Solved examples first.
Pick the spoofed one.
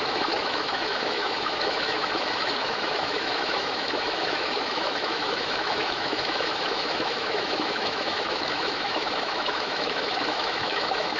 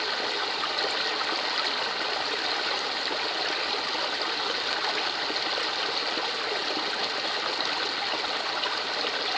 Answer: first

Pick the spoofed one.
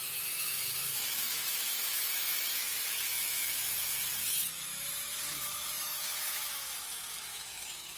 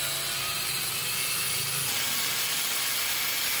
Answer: first